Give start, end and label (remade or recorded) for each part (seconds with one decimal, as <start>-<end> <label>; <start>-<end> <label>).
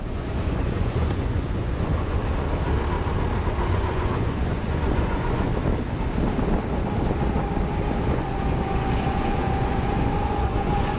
0.0-2.2 remade; 2.2-3.6 recorded; 3.6-5.5 remade; 5.5-8.0 recorded; 8.0-11.0 remade